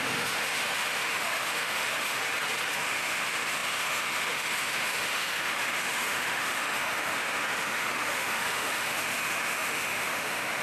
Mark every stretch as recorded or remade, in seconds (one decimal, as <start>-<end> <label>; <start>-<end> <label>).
0.0-2.2 remade; 2.2-2.7 recorded; 2.7-10.6 remade